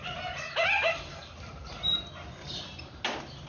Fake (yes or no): no